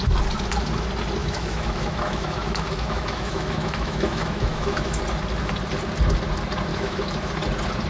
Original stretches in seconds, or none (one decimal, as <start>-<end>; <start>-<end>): 0.0-1.2; 5.0-6.7; 7.3-7.9